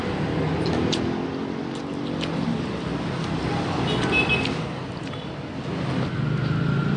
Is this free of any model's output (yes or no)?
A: yes